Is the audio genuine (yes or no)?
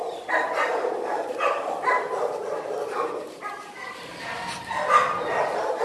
yes